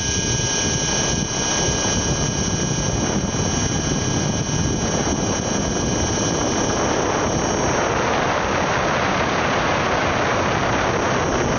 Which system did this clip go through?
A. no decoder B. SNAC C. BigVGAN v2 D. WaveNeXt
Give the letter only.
A